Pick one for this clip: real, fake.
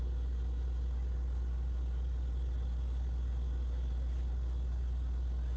real